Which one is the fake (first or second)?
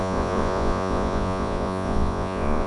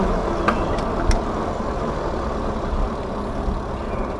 first